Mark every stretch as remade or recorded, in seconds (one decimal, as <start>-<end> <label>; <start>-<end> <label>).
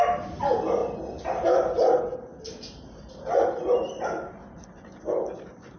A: 0.0-5.8 recorded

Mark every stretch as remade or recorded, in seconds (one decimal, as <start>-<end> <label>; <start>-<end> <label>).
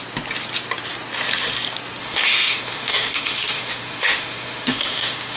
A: 0.0-2.0 recorded; 2.0-5.4 remade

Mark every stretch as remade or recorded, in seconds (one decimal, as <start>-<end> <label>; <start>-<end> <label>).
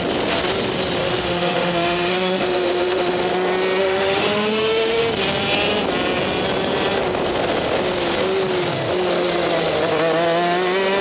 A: 0.0-1.0 recorded; 1.0-3.3 remade; 3.3-3.8 recorded; 3.8-5.0 remade; 5.0-11.0 recorded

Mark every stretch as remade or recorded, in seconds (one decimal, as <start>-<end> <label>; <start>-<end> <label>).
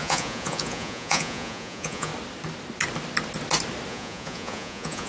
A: 0.0-2.1 remade; 2.1-3.9 recorded; 3.9-5.1 remade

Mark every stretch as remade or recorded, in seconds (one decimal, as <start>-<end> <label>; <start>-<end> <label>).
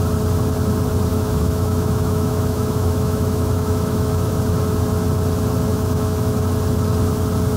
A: 0.0-1.1 recorded; 1.1-4.3 remade; 4.3-5.7 recorded; 5.7-6.3 remade; 6.3-7.6 recorded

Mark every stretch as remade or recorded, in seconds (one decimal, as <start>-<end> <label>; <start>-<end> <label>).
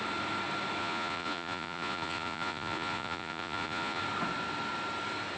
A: 0.0-0.8 recorded; 0.8-4.0 remade; 4.0-5.4 recorded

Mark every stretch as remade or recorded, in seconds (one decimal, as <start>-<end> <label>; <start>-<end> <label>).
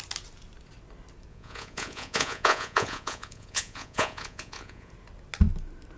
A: 0.0-1.3 recorded; 1.3-4.9 remade; 4.9-6.0 recorded